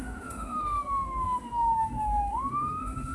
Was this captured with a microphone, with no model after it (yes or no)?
no